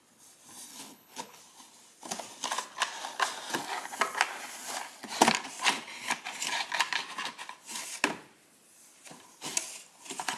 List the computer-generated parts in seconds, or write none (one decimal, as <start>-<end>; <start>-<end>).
0.7-1.4